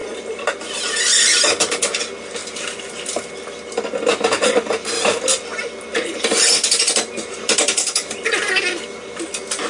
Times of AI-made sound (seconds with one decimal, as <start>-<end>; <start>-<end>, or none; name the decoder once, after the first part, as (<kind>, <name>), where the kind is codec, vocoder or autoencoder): 0.0-2.0 (vocoder, BigVGAN v2); 2.4-3.3